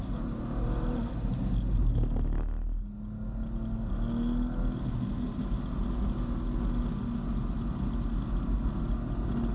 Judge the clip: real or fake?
real